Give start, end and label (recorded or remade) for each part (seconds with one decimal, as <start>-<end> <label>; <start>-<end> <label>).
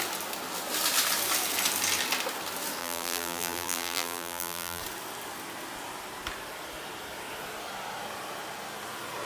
0.0-2.8 recorded; 2.8-4.8 remade; 4.8-9.3 recorded